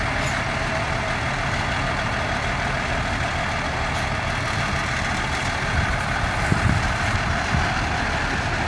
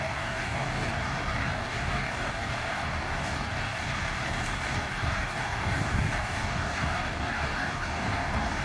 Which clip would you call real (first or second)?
first